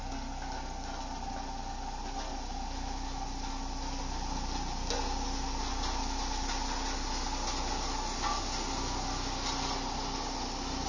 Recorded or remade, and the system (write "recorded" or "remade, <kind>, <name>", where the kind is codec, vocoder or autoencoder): recorded